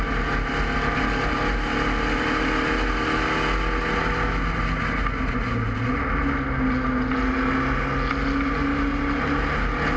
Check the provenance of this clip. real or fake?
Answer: real